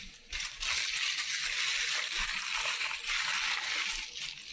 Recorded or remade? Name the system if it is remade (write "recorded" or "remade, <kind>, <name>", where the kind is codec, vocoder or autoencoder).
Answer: recorded